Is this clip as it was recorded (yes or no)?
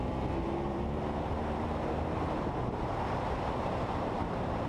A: no